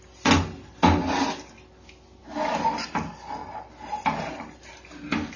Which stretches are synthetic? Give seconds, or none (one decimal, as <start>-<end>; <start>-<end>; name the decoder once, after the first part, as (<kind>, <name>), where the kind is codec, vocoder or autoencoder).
none